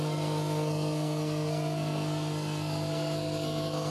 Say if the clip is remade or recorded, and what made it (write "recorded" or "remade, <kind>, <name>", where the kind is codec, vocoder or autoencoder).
remade, codec, SNAC